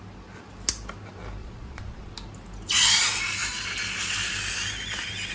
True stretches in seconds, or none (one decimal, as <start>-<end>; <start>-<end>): 0.0-1.4; 2.1-5.3